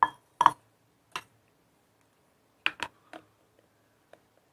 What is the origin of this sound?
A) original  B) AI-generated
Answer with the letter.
A